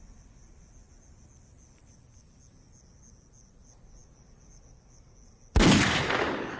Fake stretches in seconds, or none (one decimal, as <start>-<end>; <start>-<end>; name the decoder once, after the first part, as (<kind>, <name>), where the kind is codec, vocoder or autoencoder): none